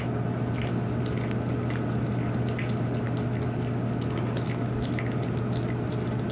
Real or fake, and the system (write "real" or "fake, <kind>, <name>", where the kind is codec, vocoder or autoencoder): real